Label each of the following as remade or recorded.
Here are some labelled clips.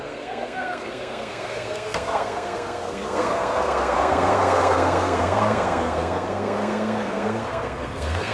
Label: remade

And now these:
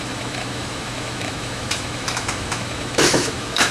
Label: remade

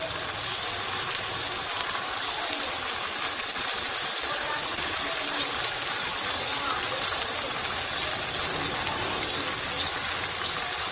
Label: recorded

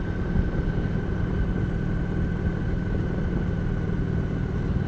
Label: recorded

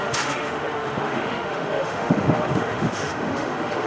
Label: remade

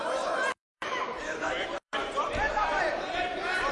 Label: remade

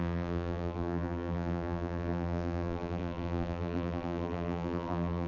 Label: remade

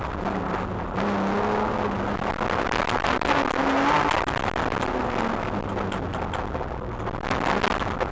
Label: recorded